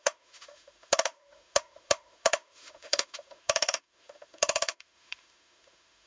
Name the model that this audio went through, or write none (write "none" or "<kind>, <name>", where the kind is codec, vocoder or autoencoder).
autoencoder, DAC-VAE